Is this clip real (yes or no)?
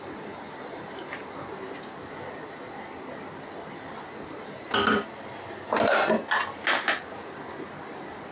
yes